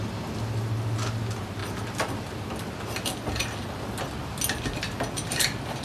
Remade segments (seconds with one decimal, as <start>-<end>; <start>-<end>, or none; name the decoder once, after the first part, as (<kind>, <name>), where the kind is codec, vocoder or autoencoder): none